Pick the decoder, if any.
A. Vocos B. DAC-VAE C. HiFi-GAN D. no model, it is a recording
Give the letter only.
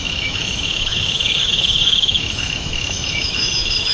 B